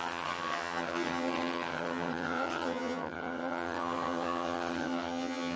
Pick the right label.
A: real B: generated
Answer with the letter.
B